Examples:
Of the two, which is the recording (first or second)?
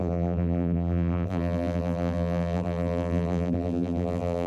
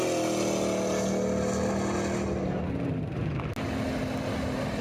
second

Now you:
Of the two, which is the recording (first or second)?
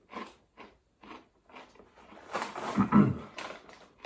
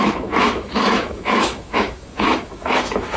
first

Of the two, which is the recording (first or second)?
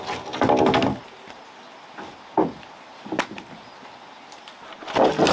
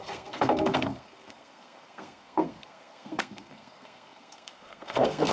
first